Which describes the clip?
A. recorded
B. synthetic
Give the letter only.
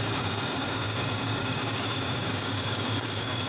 B